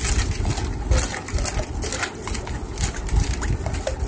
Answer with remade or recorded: recorded